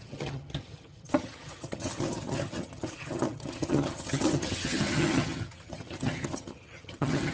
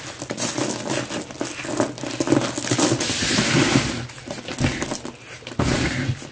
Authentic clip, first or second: second